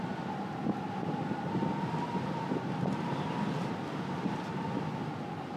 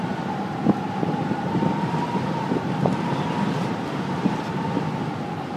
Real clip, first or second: first